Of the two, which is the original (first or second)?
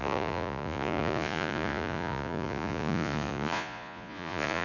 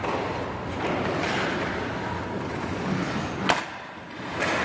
second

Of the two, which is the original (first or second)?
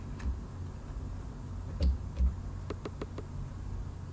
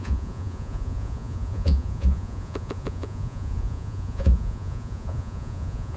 first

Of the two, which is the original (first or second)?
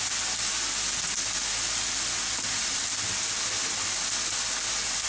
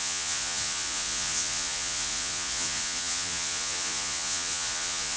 first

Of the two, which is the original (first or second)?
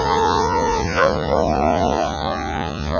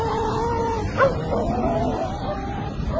second